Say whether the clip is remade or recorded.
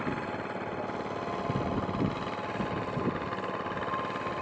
recorded